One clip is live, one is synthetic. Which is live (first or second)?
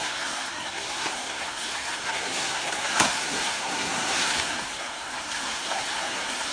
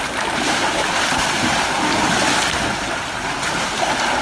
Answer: second